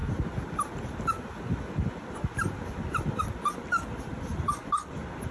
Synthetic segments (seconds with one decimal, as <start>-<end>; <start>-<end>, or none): none